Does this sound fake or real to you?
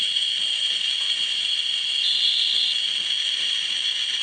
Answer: real